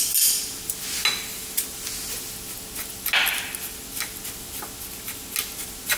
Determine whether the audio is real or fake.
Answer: real